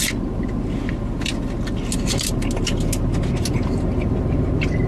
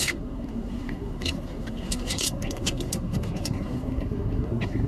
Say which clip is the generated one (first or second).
second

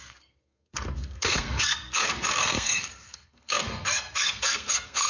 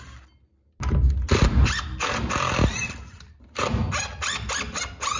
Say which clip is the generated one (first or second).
first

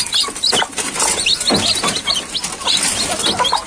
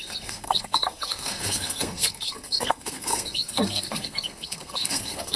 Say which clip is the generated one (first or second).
second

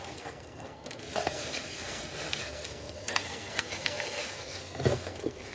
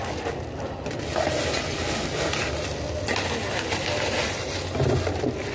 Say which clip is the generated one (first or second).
first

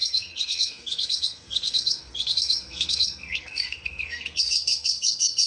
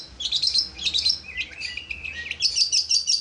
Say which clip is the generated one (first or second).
first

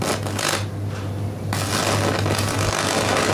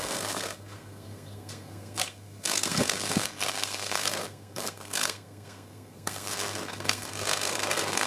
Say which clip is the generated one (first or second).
second